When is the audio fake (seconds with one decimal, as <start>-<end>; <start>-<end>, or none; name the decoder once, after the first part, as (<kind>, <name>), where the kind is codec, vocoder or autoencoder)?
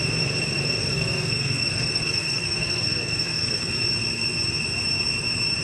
0.8-3.7 (codec, SNAC)